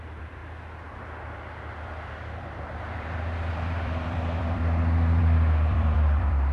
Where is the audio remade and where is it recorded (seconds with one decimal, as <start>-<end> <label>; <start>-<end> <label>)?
0.0-0.4 remade; 0.4-1.0 recorded; 1.0-4.6 remade; 4.6-5.2 recorded; 5.2-6.5 remade